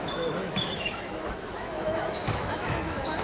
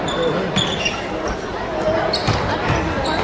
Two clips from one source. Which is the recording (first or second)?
second